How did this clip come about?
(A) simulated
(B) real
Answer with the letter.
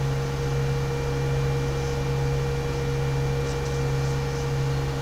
B